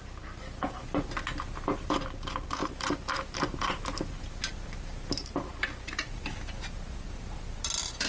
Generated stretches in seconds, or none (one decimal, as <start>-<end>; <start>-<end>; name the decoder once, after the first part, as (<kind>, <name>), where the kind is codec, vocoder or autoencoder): 2.6-4.2 (vocoder, BigVGAN v2); 5.2-6.3